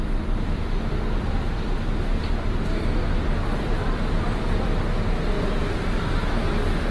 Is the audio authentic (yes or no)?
no